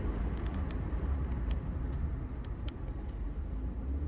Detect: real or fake real